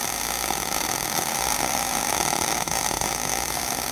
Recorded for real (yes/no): no